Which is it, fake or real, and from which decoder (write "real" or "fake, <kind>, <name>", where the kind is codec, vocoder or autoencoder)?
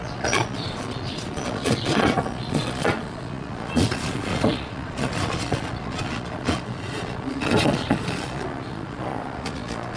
fake, vocoder, Vocos